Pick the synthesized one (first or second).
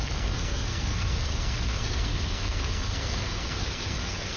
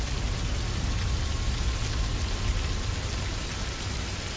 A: first